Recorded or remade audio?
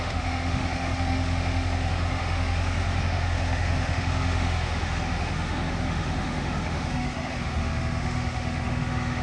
remade